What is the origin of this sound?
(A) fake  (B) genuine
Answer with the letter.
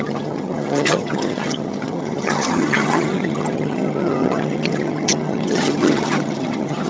A